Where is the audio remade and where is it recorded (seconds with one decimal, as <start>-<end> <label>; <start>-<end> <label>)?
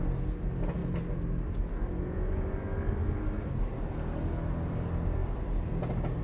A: 0.0-5.2 recorded; 5.2-5.8 remade; 5.8-6.2 recorded